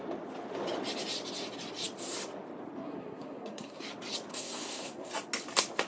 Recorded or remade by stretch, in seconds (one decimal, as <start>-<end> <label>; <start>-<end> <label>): 0.0-2.8 recorded; 2.8-3.8 remade; 3.8-4.3 recorded; 4.3-5.1 remade; 5.1-5.9 recorded